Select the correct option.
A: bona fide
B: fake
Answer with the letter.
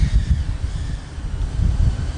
A